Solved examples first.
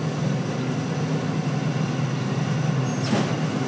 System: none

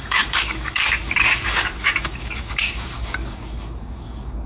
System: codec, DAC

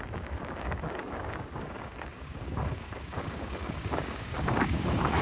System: codec, DAC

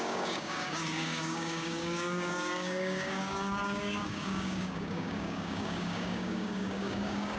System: codec, DAC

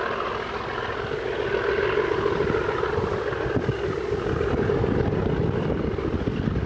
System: none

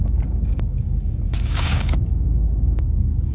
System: codec, DAC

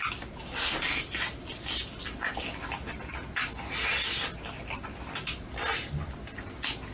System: none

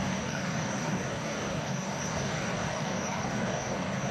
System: codec, DAC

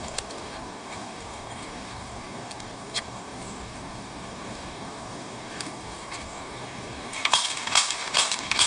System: codec, DAC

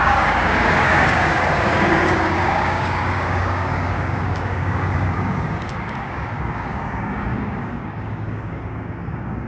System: codec, DAC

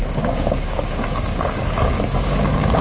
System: codec, DAC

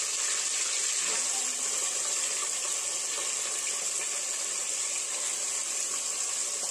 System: none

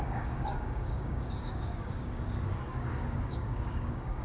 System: codec, DAC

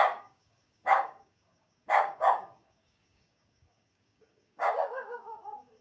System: codec, DAC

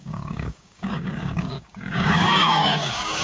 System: codec, DAC